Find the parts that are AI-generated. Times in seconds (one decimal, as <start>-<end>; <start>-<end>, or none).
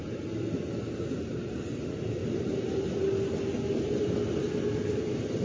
none